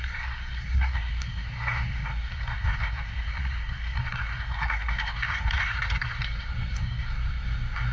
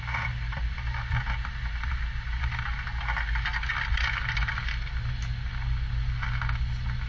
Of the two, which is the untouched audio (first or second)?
second